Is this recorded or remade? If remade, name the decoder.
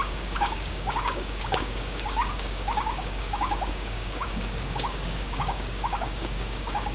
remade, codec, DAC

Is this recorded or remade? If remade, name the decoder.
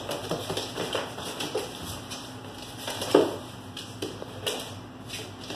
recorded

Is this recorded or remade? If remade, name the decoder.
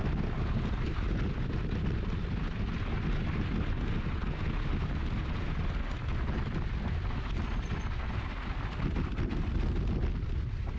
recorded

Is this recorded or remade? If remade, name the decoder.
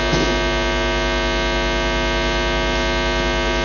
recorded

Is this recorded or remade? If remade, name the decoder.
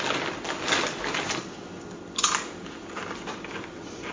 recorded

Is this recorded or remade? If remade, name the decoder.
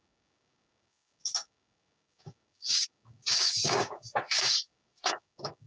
remade, codec, DAC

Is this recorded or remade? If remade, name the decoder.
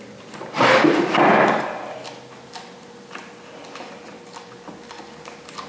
recorded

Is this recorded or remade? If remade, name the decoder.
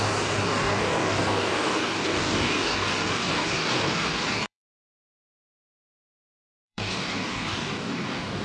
remade, codec, DAC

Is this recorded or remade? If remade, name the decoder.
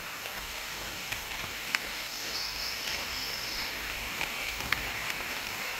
remade, codec, DAC